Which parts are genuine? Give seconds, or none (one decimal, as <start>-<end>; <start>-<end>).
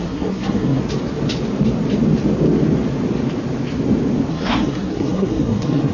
0.8-4.3